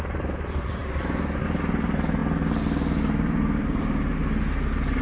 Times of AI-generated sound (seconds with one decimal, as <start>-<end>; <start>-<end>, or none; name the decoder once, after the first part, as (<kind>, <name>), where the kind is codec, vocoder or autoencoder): 0.0-2.2 (vocoder, BigVGAN v2); 3.0-4.2